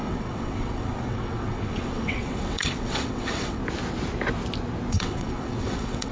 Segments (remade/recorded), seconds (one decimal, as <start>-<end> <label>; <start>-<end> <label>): 0.0-3.6 remade; 3.6-4.9 recorded; 4.9-6.1 remade